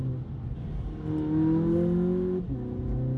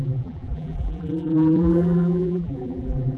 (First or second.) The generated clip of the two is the second